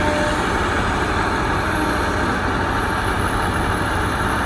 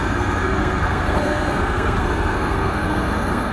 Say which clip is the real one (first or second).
first